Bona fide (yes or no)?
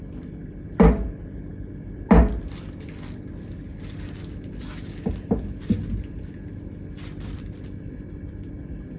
yes